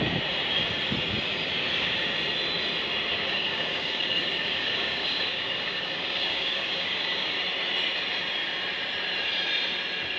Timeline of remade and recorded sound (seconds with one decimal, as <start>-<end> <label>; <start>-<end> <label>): 0.0-3.1 recorded; 3.1-7.3 remade; 7.3-10.2 recorded